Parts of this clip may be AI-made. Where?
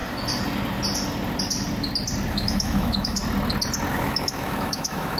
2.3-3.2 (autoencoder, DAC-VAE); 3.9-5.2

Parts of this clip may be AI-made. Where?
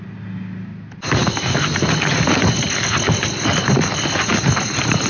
none